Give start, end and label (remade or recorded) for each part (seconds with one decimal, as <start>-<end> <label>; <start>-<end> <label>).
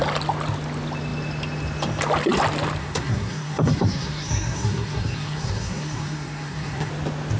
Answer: 0.0-2.8 recorded; 2.8-6.9 remade; 6.9-7.4 recorded